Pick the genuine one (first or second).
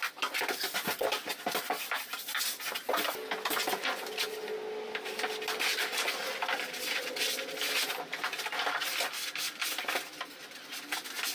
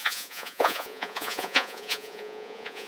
first